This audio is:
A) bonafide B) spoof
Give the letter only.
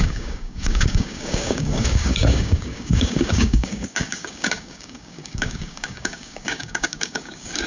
B